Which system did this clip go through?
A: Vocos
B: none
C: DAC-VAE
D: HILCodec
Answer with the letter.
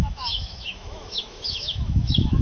C